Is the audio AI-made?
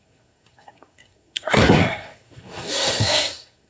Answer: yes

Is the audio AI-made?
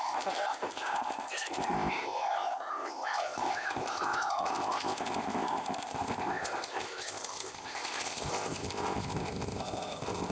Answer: yes